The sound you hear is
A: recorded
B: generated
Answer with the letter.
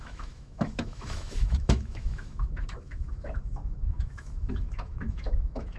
B